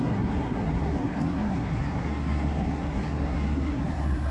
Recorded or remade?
remade